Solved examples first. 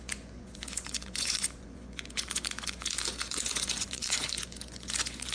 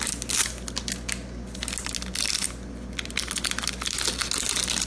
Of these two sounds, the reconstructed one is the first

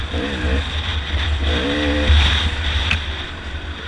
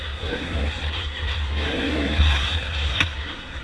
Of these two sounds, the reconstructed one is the second